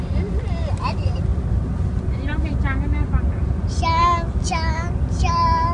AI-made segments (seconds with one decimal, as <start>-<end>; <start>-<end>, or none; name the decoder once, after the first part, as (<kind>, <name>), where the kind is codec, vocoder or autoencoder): none